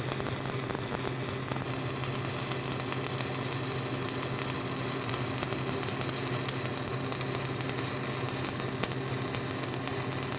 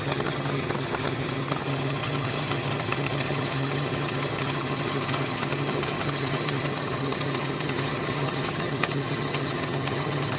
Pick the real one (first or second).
first